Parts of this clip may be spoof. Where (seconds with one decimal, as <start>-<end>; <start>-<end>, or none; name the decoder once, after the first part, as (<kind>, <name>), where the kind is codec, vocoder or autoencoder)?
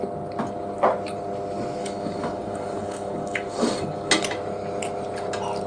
1.8-4.1 (codec, DAC)